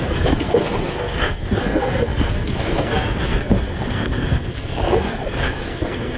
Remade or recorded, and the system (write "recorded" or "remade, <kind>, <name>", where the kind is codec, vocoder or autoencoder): remade, codec, SNAC